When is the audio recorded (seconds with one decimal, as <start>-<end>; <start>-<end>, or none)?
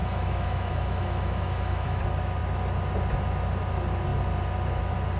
2.0-5.2